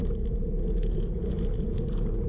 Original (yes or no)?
yes